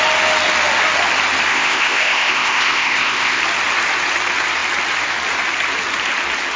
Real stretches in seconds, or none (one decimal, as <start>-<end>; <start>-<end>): 0.0-1.5; 3.4-6.6